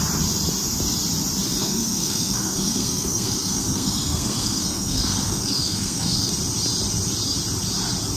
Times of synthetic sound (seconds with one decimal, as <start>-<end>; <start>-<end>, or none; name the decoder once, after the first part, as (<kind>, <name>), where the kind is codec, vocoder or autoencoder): 1.6-6.3 (codec, SNAC)